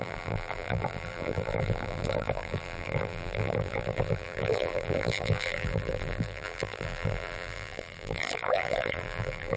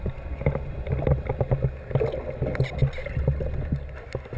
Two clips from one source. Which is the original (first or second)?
second